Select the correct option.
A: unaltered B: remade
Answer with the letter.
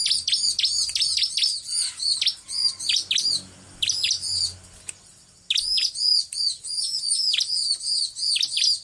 A